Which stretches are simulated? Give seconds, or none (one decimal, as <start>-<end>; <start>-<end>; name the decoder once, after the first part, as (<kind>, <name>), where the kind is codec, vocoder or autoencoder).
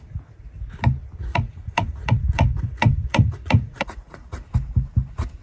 1.3-4.5 (vocoder, Vocos)